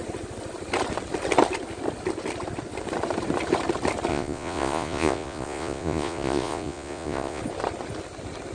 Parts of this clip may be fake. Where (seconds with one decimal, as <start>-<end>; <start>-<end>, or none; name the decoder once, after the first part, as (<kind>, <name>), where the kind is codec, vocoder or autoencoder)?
4.1-7.4 (vocoder, Vocos)